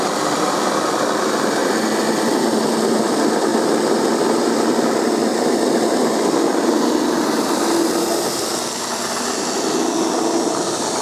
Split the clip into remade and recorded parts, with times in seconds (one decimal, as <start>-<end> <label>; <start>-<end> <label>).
0.0-1.6 remade; 1.6-2.9 recorded; 2.9-3.5 remade; 3.5-4.1 recorded; 4.1-5.3 remade; 5.3-10.5 recorded; 10.5-11.0 remade